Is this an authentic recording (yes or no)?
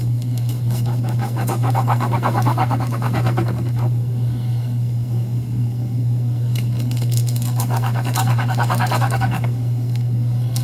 no